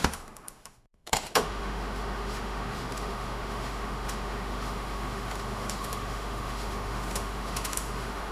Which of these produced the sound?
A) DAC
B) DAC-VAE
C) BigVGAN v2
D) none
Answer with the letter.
B